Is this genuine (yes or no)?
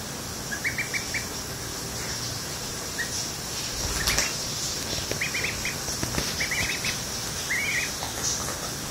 yes